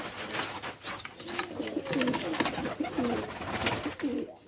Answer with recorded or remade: recorded